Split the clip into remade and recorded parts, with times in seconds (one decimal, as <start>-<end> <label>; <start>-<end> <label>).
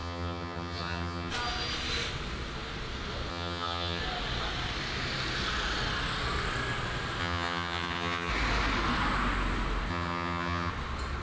0.0-1.3 remade; 1.3-3.3 recorded; 3.3-4.0 remade; 4.0-7.2 recorded; 7.2-8.3 remade; 8.3-9.9 recorded; 9.9-10.7 remade; 10.7-11.2 recorded